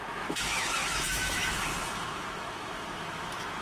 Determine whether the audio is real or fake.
fake